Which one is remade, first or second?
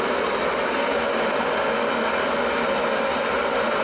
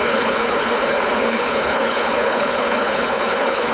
second